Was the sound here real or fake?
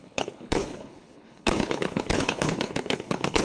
fake